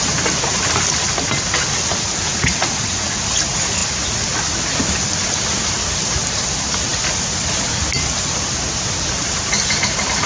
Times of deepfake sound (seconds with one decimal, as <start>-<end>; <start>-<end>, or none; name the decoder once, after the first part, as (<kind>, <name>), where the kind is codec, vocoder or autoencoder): 2.3-3.2 (vocoder, Vocos)